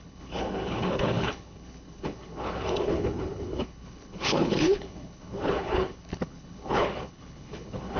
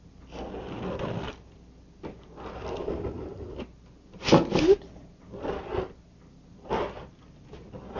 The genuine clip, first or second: second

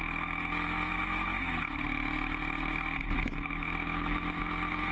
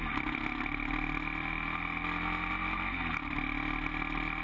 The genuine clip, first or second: second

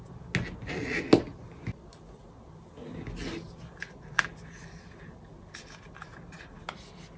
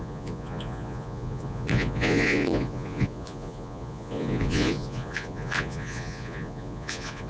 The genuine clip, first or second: first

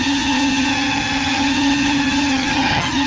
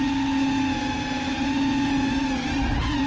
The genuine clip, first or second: second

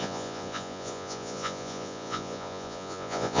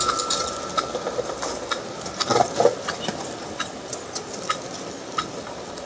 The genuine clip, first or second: second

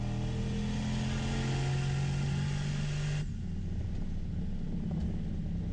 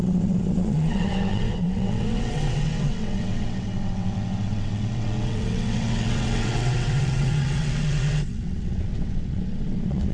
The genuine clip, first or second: first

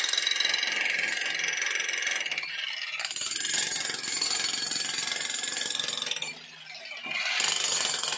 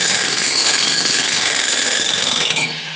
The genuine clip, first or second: first